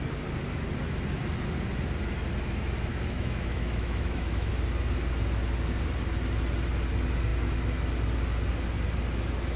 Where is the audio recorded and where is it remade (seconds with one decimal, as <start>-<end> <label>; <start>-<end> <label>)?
0.0-2.9 recorded; 2.9-4.5 remade; 4.5-9.6 recorded